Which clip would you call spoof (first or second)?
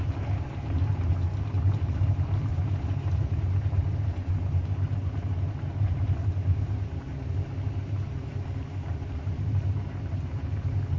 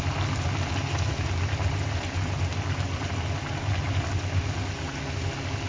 first